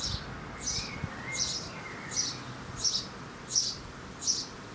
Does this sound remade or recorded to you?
recorded